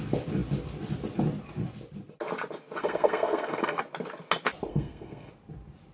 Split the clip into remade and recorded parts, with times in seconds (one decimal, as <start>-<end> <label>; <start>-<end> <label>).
0.0-2.8 recorded; 2.8-3.8 remade; 3.8-4.7 recorded; 4.7-5.3 remade; 5.3-5.9 recorded